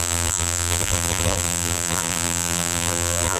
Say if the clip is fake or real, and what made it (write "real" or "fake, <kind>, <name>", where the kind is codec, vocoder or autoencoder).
fake, vocoder, BigVGAN v2